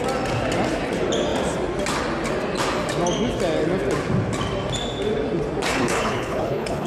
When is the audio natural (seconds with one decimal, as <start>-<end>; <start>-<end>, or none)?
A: 0.0-5.7